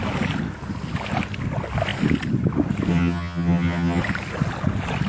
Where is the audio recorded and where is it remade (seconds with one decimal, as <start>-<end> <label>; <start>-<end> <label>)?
0.0-2.9 recorded; 2.9-4.0 remade; 4.0-5.1 recorded

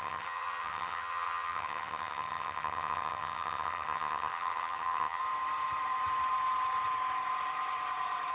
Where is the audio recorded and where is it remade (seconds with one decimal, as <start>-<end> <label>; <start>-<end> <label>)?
0.0-5.2 remade; 5.2-8.3 recorded